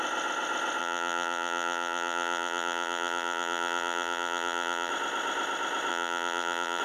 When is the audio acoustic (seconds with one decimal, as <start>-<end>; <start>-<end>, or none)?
0.0-0.8; 4.9-5.9